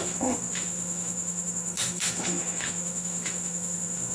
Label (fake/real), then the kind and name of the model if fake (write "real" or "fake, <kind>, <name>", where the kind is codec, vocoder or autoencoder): fake, autoencoder, DAC-VAE